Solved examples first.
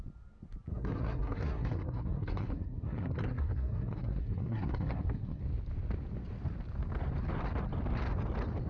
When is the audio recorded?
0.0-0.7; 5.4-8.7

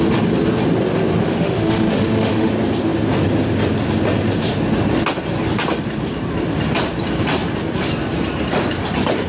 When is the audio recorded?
0.0-1.2; 2.5-9.3

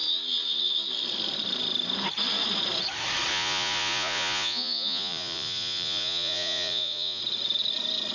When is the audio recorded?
0.0-3.3; 7.2-8.1

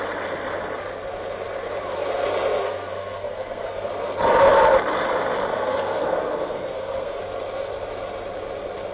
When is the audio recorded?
0.0-2.6; 3.9-5.5; 7.2-8.9

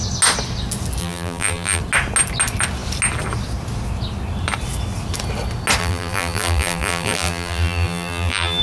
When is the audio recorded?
0.0-1.0; 1.8-5.8